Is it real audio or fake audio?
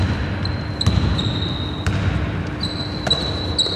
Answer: real